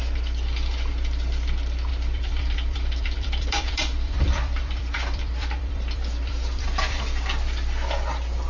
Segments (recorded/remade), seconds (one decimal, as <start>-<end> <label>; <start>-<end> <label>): 0.0-1.9 recorded; 1.9-7.0 remade; 7.0-8.5 recorded